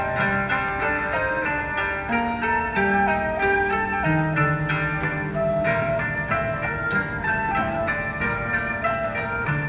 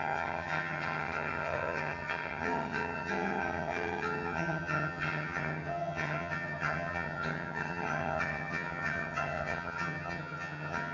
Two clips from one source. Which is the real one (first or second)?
first